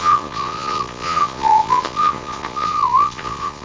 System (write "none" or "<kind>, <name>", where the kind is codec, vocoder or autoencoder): vocoder, Vocos